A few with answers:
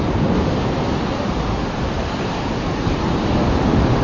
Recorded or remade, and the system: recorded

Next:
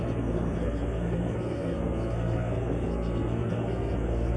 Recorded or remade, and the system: remade, codec, SNAC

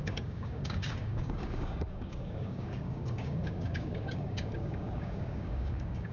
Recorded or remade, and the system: remade, codec, DAC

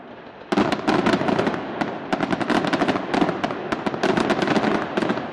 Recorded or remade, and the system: recorded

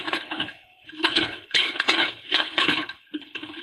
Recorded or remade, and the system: remade, codec, HILCodec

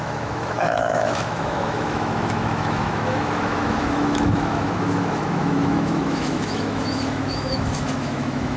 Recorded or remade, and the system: remade, autoencoder, DAC-VAE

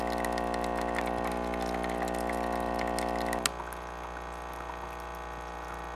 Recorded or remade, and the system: recorded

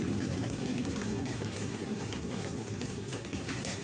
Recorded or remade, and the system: remade, codec, SNAC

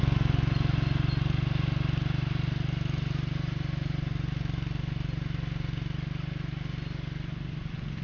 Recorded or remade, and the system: recorded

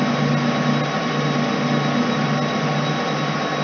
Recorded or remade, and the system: recorded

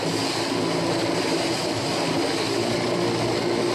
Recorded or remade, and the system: recorded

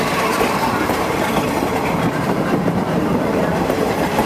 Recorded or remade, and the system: remade, vocoder, BigVGAN v2